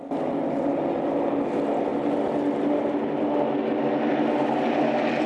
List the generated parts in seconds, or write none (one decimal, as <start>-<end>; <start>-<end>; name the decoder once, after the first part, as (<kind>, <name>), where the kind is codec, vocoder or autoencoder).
none